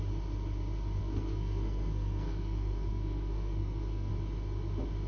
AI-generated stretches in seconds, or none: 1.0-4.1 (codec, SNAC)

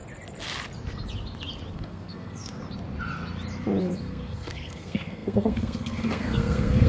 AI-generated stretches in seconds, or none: 1.7-2.6 (codec, SNAC); 3.8-6.9

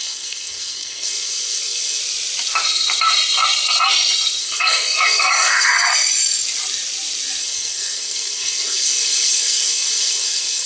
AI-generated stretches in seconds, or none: 0.0-2.0 (codec, SNAC); 4.4-5.7; 7.4-10.7

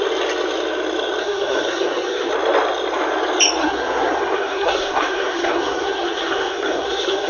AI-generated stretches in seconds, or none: 1.2-2.3 (codec, SNAC); 3.6-7.3

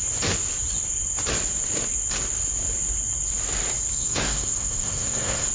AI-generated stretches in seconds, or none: 3.9-5.5 (codec, SNAC)

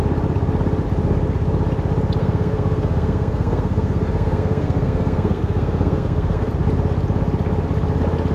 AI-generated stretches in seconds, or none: 2.2-6.5 (codec, SNAC)